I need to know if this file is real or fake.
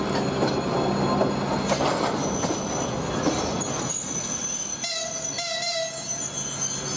real